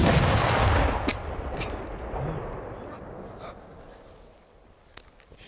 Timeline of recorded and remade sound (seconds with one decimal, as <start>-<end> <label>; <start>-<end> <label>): 0.0-5.5 recorded